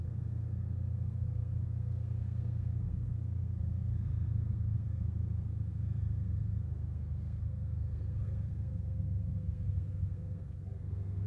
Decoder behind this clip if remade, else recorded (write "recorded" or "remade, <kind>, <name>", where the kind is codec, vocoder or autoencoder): remade, codec, SNAC